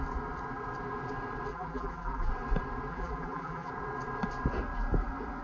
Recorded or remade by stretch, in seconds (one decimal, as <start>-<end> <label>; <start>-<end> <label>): 0.0-1.5 recorded; 1.5-2.3 remade; 2.3-2.9 recorded; 2.9-3.7 remade; 3.7-5.4 recorded